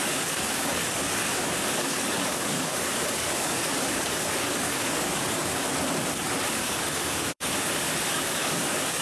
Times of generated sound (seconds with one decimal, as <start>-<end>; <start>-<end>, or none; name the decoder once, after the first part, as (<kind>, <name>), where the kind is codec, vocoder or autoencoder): 0.0-5.6 (codec, DAC); 6.5-9.0